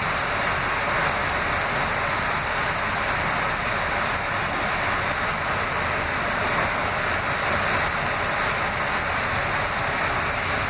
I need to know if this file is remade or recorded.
recorded